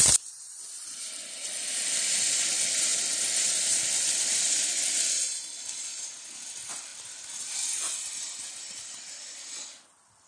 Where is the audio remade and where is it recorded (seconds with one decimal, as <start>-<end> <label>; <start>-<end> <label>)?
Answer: 0.0-10.3 recorded